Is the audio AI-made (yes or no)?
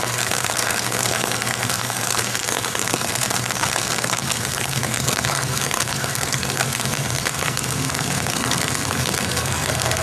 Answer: yes